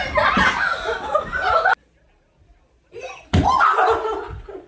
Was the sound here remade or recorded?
recorded